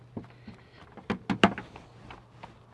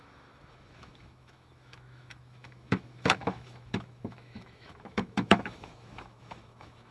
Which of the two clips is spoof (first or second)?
second